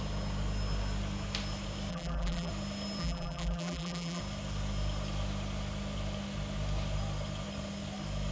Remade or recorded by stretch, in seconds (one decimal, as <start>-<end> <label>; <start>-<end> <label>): 0.0-1.9 recorded; 1.9-2.5 remade; 2.5-3.0 recorded; 3.0-4.2 remade; 4.2-8.3 recorded